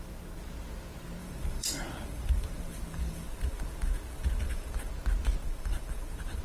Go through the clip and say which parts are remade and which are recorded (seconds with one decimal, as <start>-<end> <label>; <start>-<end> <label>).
0.0-1.2 recorded; 1.2-4.9 remade; 4.9-5.4 recorded; 5.4-6.4 remade